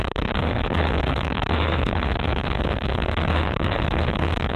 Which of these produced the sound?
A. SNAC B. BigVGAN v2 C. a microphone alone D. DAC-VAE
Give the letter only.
D